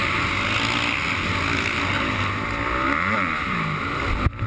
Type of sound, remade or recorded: recorded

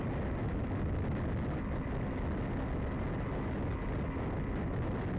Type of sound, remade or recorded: recorded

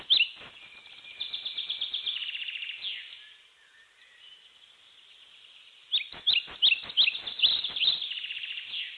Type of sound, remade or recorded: recorded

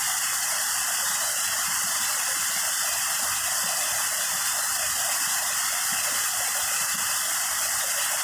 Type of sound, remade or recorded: recorded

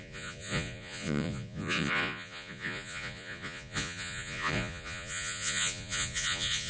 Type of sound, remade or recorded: remade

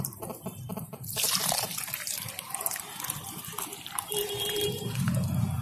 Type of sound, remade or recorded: remade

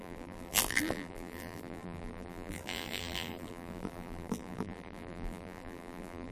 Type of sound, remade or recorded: remade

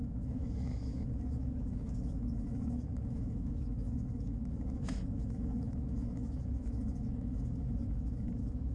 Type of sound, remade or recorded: remade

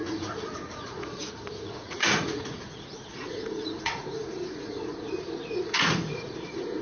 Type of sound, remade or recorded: remade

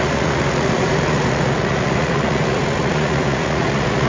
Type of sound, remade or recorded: remade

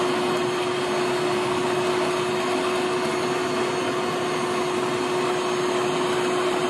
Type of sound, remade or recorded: recorded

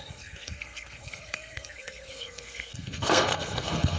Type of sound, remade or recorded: remade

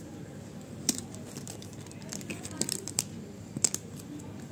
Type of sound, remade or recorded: recorded